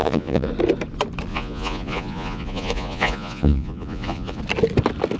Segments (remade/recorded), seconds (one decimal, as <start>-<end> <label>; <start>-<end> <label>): 0.0-0.5 remade; 0.5-1.3 recorded; 1.3-4.4 remade; 4.4-5.2 recorded